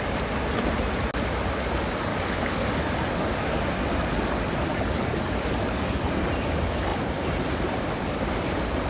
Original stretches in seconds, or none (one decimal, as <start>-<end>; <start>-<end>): 0.0-2.1; 3.6-4.7; 6.0-8.9